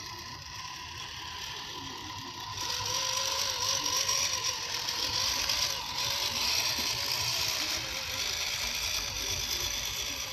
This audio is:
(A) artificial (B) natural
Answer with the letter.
A